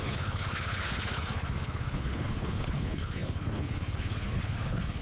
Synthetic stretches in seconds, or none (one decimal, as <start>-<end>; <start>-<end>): 0.0-5.0

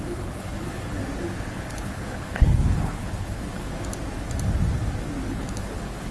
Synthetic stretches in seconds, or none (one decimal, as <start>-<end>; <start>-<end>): 0.0-1.0; 1.5-3.7; 5.3-6.1